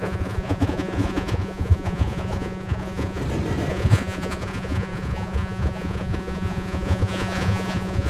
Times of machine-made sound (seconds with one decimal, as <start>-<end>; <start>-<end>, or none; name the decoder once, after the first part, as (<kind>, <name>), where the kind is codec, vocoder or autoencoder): 0.0-3.2 (vocoder, Vocos); 3.7-8.1